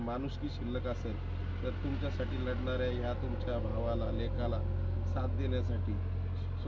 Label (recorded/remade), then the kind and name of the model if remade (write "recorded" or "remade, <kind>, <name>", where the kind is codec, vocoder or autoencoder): recorded